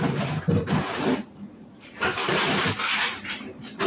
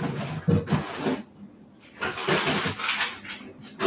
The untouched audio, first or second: second